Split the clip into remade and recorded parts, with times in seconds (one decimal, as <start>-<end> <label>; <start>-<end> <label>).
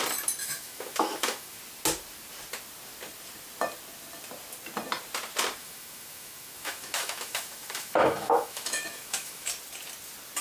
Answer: 0.0-0.4 recorded; 0.4-1.6 remade; 1.6-5.6 recorded; 5.6-9.5 remade; 9.5-10.4 recorded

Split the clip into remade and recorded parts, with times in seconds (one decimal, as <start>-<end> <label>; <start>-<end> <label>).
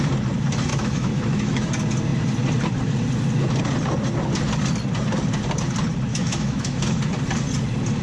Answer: 0.0-0.7 recorded; 0.7-1.7 remade; 1.7-6.1 recorded; 6.1-7.0 remade; 7.0-8.0 recorded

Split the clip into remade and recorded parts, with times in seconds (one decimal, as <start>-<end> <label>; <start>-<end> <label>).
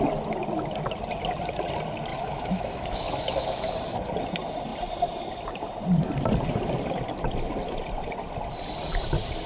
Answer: 0.0-2.1 recorded; 2.1-3.7 remade; 3.7-9.5 recorded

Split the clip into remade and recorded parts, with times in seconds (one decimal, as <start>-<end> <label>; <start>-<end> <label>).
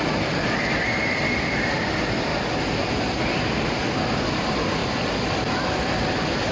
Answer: 0.0-6.5 recorded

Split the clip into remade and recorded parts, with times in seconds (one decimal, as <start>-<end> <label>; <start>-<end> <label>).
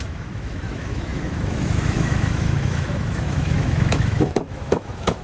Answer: 0.0-5.2 remade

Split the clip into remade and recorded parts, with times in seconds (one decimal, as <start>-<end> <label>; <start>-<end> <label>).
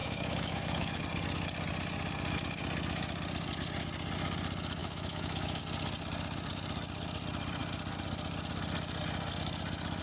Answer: 0.0-1.0 remade; 1.0-4.8 recorded; 4.8-5.6 remade; 5.6-10.0 recorded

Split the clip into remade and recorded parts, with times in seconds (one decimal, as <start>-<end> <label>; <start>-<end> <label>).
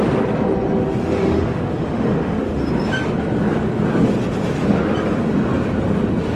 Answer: 0.0-1.0 recorded; 1.0-2.6 remade; 2.6-6.4 recorded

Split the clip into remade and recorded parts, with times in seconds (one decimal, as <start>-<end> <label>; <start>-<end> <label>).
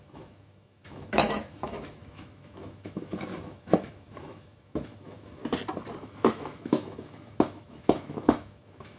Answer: 0.0-5.4 remade; 5.4-6.0 recorded; 6.0-9.0 remade